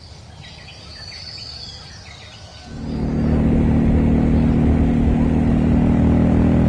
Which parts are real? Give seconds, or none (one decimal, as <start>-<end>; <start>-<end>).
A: 0.0-6.7